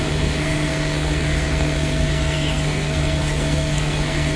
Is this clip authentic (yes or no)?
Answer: no